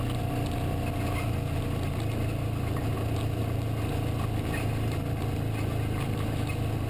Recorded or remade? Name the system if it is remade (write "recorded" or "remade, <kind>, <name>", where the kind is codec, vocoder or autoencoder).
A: recorded